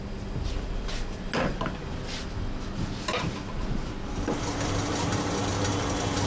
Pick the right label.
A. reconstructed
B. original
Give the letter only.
B